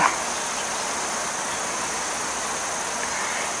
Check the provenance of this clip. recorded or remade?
recorded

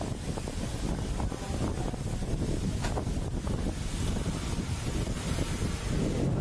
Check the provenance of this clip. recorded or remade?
recorded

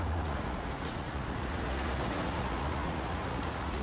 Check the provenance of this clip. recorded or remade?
remade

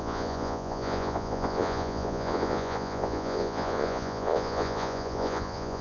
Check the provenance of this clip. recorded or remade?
remade